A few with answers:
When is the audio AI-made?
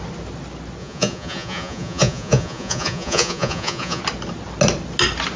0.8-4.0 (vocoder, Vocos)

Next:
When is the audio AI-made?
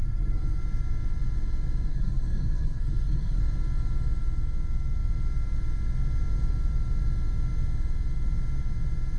0.0-0.6 (codec, SNAC); 1.9-3.4